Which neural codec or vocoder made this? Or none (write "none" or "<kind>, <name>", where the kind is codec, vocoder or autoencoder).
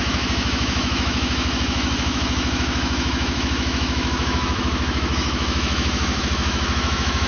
autoencoder, DAC-VAE